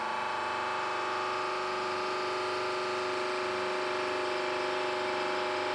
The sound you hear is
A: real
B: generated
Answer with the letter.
B